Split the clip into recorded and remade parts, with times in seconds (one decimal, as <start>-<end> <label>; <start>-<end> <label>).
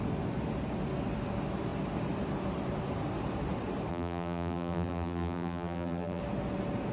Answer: 0.0-3.9 recorded; 3.9-6.2 remade; 6.2-6.9 recorded